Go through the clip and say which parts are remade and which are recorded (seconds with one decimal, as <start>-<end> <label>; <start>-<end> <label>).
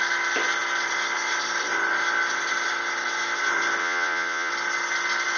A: 0.0-3.8 recorded; 3.8-4.5 remade; 4.5-5.4 recorded